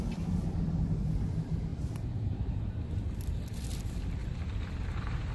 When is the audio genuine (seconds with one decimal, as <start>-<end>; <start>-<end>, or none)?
0.0-4.2